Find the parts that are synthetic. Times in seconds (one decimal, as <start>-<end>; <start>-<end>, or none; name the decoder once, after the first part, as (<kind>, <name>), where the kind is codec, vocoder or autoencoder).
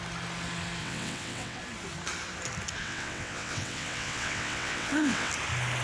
0.8-1.6 (vocoder, WaveNeXt); 2.8-5.3